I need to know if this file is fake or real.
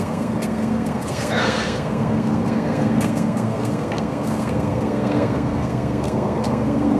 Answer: fake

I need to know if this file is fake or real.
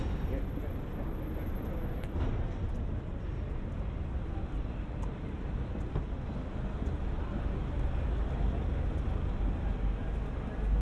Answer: real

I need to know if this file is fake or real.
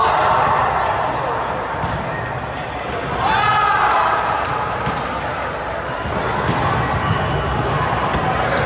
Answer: real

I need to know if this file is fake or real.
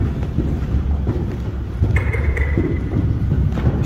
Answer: real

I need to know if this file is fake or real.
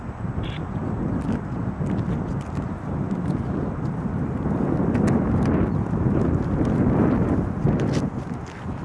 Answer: real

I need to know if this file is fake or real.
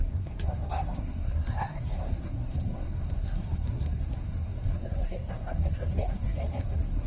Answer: fake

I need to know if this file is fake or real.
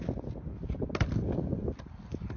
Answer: real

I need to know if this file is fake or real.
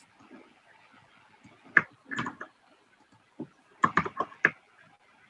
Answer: real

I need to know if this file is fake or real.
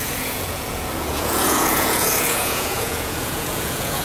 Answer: fake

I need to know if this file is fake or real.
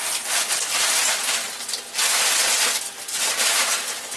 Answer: real